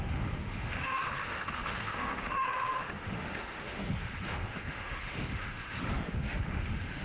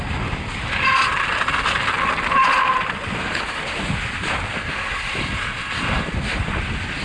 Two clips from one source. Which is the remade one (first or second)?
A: first